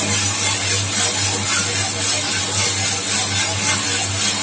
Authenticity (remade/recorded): recorded